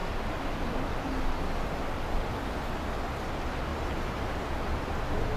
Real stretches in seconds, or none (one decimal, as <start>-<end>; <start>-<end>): 0.0-3.7; 4.9-5.4